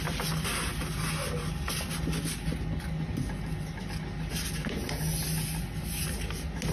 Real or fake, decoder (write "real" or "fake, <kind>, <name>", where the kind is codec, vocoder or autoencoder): real